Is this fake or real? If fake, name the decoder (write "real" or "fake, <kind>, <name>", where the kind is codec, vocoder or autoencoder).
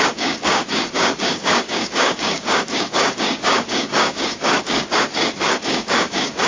fake, codec, DAC